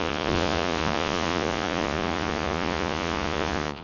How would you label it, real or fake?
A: fake